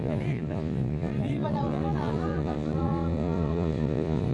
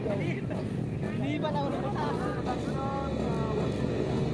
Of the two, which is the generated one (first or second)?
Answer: first